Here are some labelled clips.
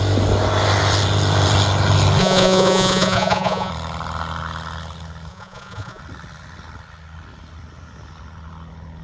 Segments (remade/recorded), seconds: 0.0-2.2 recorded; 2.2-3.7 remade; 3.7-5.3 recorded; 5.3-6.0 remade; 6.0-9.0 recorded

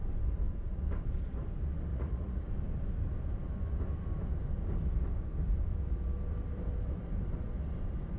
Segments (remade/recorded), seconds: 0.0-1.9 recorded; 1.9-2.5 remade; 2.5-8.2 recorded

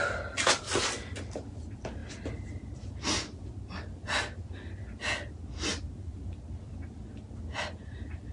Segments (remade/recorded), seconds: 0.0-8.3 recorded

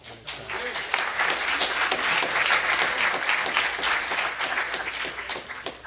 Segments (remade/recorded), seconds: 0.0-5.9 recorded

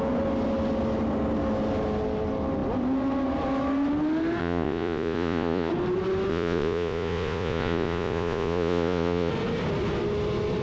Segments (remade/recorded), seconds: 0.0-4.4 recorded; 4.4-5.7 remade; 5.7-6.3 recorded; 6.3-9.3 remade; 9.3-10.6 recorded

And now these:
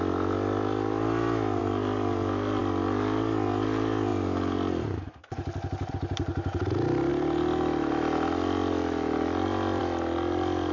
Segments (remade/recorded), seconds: 0.0-10.7 recorded